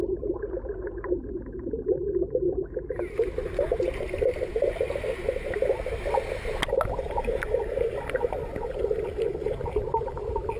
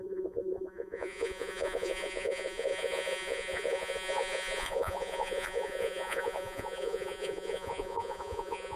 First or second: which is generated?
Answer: second